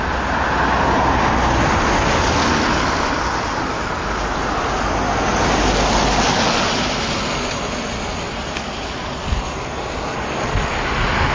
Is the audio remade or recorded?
recorded